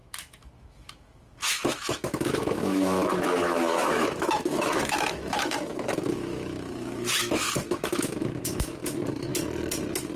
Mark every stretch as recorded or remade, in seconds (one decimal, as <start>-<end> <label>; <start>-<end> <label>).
0.0-8.8 remade; 8.8-10.2 recorded